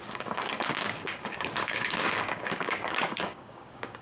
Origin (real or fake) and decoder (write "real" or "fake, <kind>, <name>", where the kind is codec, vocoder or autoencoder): fake, codec, DAC